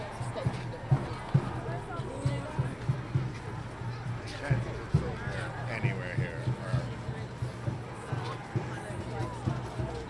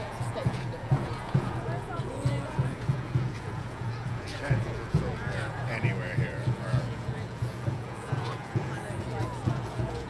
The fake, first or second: second